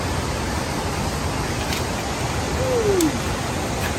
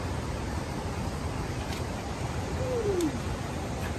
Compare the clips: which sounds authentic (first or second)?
first